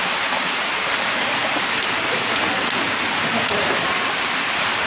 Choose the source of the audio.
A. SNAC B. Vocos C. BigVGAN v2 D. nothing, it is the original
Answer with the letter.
C